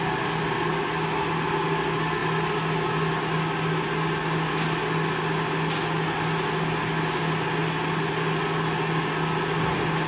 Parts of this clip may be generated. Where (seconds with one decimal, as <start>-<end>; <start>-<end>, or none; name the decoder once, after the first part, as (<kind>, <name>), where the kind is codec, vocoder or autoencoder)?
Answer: none